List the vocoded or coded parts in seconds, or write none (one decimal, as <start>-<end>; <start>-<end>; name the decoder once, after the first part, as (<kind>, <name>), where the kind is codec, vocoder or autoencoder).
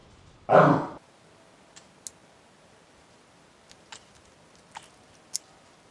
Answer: none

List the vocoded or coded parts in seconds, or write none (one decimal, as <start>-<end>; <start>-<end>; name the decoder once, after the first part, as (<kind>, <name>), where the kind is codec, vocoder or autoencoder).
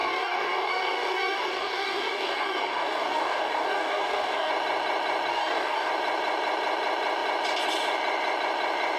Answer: 0.0-4.5 (codec, DAC); 5.3-5.9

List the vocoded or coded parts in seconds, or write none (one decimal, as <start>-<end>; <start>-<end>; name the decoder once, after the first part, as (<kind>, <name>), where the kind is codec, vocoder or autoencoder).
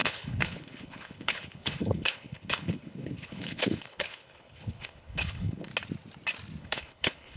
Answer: 0.0-5.7 (codec, HILCodec); 6.6-7.4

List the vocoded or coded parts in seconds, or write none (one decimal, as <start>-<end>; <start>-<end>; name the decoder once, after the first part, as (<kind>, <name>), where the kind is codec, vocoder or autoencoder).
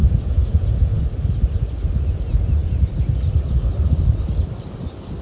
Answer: 0.0-1.0 (vocoder, Vocos)